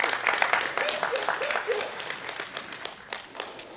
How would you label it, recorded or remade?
recorded